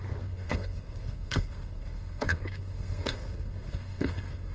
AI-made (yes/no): yes